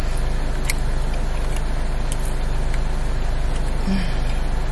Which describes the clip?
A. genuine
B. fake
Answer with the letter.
A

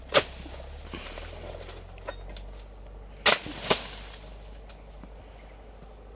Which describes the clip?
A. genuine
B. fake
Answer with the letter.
A